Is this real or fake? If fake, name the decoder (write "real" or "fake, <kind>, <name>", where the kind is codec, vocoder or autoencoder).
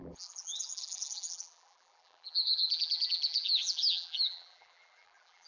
fake, vocoder, BigVGAN v2